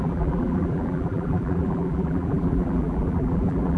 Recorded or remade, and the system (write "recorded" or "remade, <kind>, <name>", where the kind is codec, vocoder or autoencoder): remade, vocoder, BigVGAN v2